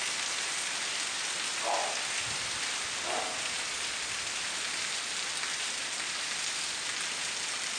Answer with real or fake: real